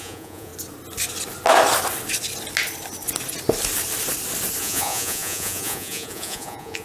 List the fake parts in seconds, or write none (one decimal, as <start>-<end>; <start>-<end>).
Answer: 0.0-0.5; 4.6-6.8